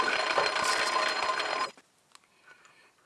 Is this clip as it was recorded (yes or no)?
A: yes